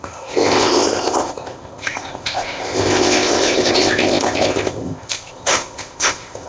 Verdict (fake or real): fake